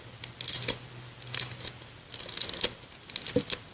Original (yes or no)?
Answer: yes